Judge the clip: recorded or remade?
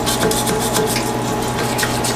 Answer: recorded